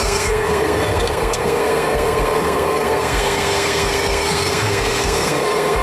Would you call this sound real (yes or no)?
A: no